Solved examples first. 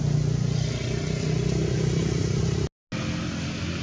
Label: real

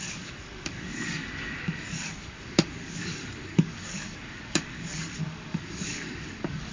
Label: fake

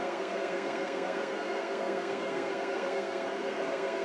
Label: fake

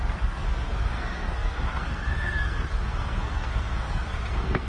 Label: fake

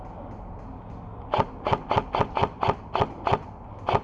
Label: real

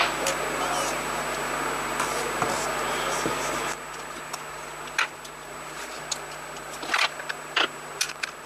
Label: real